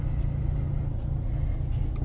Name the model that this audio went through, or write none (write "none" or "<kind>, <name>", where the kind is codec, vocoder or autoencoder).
none